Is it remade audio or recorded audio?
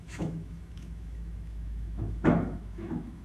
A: remade